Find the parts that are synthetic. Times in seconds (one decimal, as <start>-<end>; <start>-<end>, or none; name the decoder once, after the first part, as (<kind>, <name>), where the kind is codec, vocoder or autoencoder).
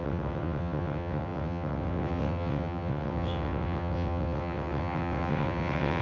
0.0-6.0 (vocoder, WaveNeXt)